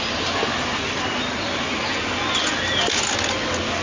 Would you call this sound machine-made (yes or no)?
no